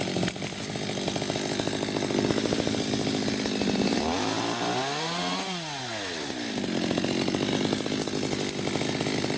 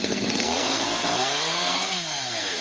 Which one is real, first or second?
first